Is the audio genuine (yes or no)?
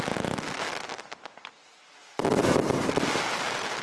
yes